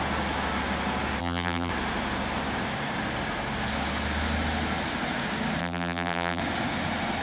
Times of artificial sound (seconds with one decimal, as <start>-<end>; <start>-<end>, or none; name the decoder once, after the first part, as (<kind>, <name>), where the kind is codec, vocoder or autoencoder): 1.2-1.7 (vocoder, BigVGAN v2); 5.6-6.4